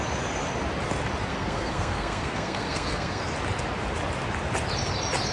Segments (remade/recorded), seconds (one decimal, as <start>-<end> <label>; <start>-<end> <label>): 0.0-1.3 recorded; 1.3-3.2 remade; 3.2-5.3 recorded